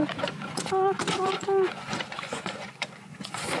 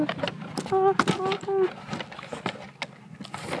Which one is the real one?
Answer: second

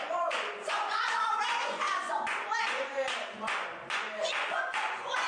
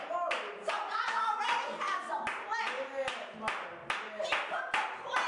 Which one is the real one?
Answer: second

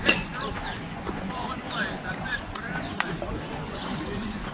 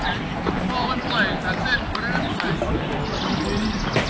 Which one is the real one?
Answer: second